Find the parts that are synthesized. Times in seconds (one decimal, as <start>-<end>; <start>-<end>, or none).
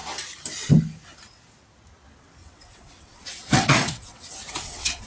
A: 2.4-5.1